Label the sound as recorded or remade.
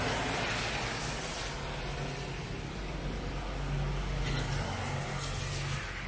recorded